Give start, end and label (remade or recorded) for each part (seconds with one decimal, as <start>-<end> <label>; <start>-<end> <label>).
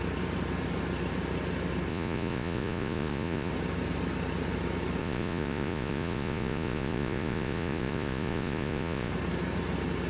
0.0-1.9 recorded; 1.9-3.5 remade; 3.5-5.0 recorded; 5.0-9.1 remade; 9.1-10.1 recorded